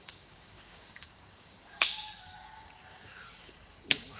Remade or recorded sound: remade